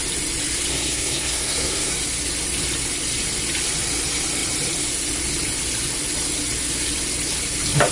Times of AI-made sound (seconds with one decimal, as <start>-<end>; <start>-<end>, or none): 0.7-1.9